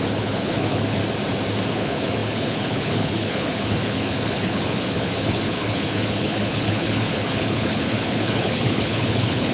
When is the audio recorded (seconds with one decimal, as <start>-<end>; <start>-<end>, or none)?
1.0-1.7